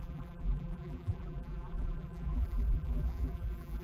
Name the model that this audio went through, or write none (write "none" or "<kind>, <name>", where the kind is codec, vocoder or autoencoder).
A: vocoder, BigVGAN v2